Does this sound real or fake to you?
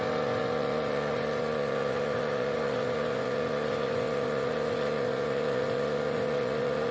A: fake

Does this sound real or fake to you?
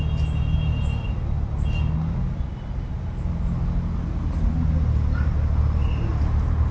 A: real